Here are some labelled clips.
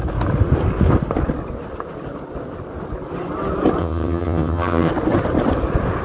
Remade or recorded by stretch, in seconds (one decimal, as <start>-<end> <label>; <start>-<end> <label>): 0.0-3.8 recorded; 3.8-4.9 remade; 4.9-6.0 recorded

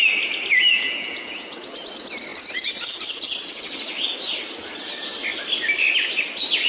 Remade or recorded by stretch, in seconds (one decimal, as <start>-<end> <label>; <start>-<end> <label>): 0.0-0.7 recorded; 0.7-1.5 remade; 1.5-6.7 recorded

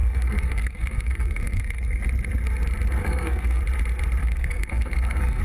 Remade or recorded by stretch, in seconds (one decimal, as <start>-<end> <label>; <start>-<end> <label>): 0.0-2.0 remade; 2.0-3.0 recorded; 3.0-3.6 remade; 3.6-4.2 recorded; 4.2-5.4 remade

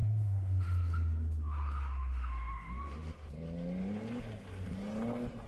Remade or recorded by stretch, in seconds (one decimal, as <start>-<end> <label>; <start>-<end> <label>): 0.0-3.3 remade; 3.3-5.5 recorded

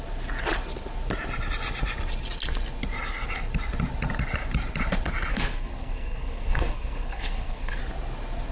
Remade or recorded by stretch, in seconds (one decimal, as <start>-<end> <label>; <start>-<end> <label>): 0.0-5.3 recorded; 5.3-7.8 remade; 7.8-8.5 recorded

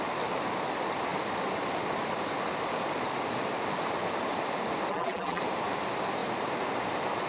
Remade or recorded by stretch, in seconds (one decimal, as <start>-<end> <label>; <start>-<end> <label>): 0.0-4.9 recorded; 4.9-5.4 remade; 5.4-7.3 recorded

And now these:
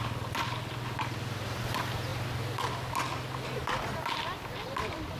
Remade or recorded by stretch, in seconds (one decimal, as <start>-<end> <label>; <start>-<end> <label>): 0.0-5.2 recorded

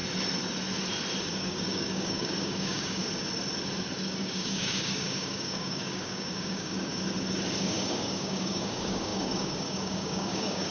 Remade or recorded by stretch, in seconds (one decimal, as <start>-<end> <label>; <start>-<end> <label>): 0.0-1.2 recorded; 1.2-3.0 remade; 3.0-4.2 recorded; 4.2-6.9 remade; 6.9-7.6 recorded; 7.6-10.7 remade